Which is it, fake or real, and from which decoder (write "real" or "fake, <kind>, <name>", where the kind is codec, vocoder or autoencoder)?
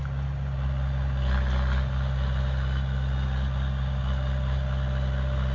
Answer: real